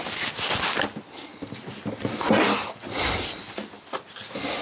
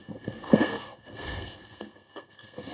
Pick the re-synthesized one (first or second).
second